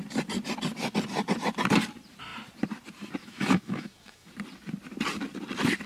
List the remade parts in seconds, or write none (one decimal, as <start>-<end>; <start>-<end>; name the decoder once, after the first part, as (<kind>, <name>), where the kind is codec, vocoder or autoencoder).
3.2-4.3 (autoencoder, DAC-VAE)